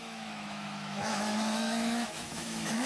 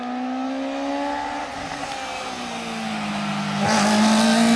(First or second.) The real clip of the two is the second